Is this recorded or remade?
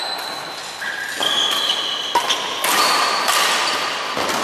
recorded